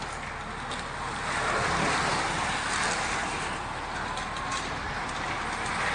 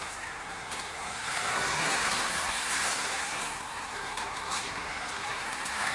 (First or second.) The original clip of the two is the first